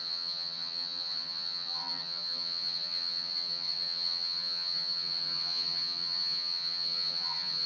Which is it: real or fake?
fake